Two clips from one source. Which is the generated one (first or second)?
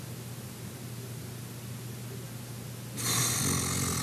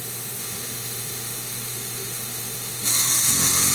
second